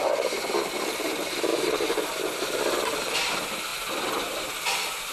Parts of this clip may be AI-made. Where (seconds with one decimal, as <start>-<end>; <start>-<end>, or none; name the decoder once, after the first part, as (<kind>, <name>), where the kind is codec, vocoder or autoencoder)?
none